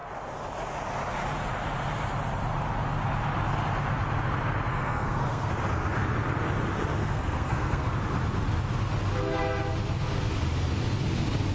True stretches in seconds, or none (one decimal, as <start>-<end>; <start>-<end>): 0.0-4.7; 5.5-7.0; 7.9-11.5